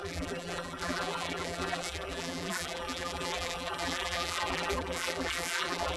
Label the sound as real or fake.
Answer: fake